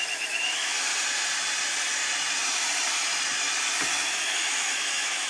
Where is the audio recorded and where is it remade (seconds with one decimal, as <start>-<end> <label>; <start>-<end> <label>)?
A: 0.0-0.9 remade; 0.9-4.1 recorded; 4.1-5.3 remade